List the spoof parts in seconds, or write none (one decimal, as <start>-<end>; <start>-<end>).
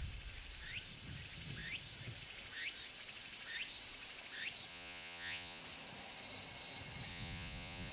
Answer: 4.7-5.6; 7.1-7.9